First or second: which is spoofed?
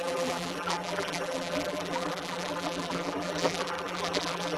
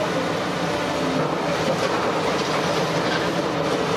first